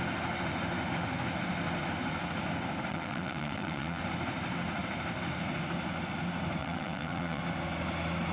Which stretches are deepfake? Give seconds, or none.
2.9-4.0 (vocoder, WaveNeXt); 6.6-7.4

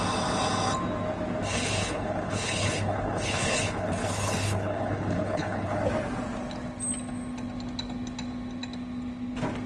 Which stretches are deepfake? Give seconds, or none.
1.5-5.8 (codec, HILCodec)

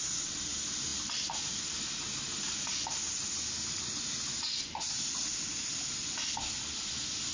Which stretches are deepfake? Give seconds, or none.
none

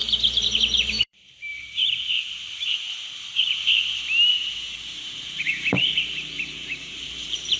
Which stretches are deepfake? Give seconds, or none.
0.0-7.6 (vocoder, BigVGAN v2)

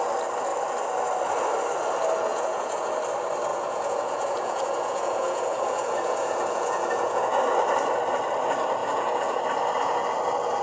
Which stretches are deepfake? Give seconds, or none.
2.3-2.9 (vocoder, Vocos); 3.5-7.4; 8.8-9.4